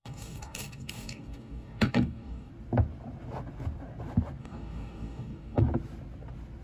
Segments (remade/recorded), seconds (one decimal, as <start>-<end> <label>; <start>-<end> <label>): 0.0-2.5 remade; 2.5-4.4 recorded; 4.4-5.6 remade; 5.6-6.6 recorded